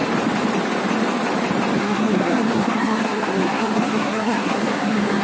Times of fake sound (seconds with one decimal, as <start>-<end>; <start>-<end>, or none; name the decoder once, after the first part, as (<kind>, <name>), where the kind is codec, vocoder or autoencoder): 1.8-5.2 (codec, SNAC)